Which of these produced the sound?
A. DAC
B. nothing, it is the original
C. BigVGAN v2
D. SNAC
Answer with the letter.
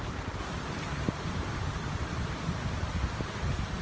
B